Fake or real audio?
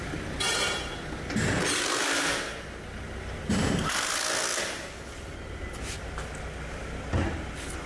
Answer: real